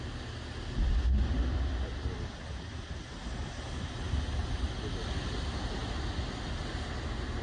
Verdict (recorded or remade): recorded